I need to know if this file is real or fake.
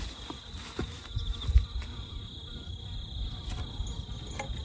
real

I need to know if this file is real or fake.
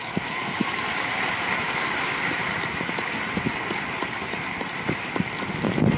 real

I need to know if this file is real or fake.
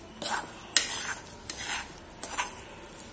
real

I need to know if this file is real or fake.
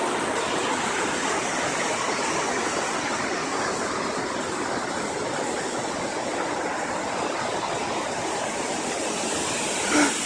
real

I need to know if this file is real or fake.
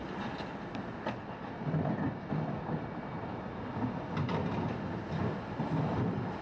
real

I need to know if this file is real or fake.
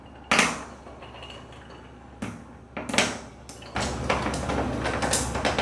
real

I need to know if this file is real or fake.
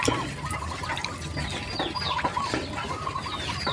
real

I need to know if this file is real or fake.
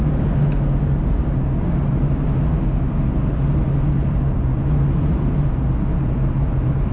real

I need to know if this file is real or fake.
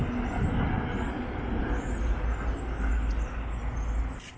real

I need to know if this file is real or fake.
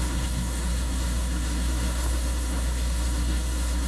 fake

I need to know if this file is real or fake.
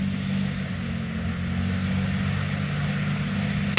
real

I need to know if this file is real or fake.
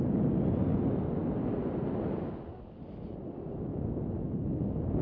real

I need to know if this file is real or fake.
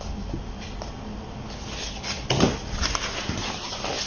real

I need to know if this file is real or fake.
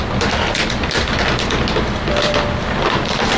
fake